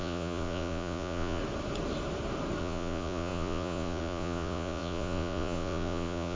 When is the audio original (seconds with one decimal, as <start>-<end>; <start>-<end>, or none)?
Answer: 1.4-2.6